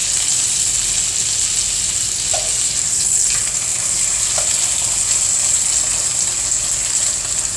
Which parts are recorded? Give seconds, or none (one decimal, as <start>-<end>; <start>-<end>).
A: 0.0-3.7; 4.4-7.6